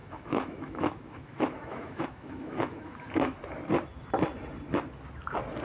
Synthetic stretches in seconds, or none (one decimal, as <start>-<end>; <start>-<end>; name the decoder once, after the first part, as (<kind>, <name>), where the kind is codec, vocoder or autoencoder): 0.0-3.4 (autoencoder, DAC-VAE)